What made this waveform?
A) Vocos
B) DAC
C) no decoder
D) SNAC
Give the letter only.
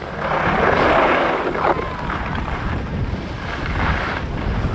C